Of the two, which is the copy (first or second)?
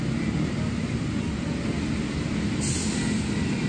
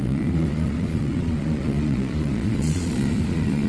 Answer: second